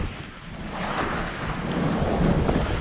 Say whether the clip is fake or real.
real